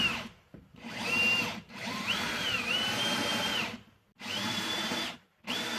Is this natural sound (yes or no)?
no